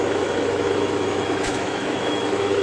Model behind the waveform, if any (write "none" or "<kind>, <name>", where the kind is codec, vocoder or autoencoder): autoencoder, DAC-VAE